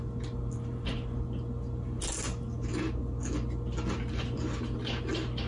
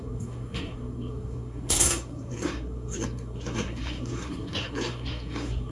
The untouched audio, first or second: first